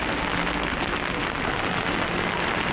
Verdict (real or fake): real